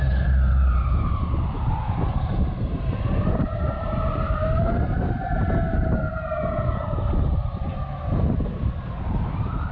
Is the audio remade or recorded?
remade